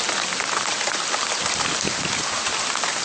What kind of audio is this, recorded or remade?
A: recorded